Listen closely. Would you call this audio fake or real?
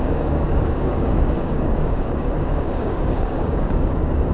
fake